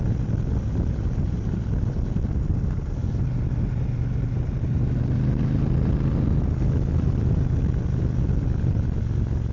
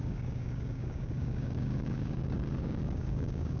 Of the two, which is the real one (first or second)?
first